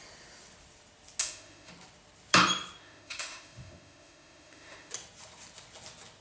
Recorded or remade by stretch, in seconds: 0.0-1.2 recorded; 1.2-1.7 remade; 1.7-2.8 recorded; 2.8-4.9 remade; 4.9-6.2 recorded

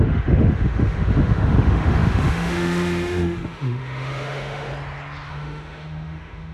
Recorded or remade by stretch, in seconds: 0.0-4.7 remade; 4.7-5.3 recorded; 5.3-6.5 remade

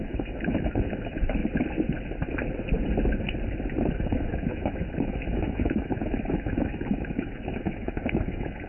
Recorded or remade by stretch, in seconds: 0.0-1.4 remade; 1.4-4.0 recorded; 4.0-8.7 remade

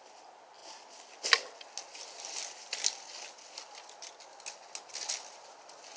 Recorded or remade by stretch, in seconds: 0.0-6.0 recorded

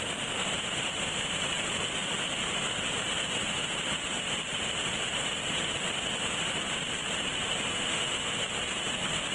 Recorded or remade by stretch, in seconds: 0.0-7.7 recorded; 7.7-8.3 remade; 8.3-9.3 recorded